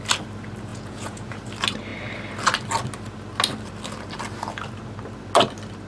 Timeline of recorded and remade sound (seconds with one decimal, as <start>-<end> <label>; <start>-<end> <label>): 0.0-0.7 recorded; 0.7-1.3 remade; 1.3-5.9 recorded